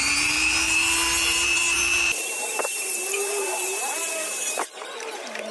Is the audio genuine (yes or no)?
no